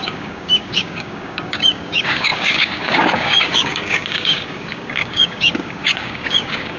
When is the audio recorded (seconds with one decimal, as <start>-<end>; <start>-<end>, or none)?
none